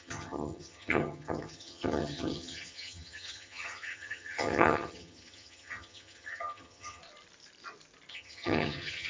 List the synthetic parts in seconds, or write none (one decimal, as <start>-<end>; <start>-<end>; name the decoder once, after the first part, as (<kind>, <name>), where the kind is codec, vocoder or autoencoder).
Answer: 0.0-7.0 (vocoder, HiFi-GAN); 8.1-9.1